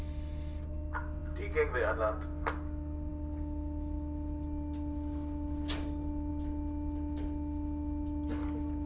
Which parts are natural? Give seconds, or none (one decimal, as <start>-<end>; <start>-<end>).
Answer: 0.0-8.9